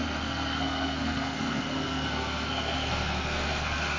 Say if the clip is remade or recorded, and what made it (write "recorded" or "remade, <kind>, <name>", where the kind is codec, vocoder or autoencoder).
remade, codec, SNAC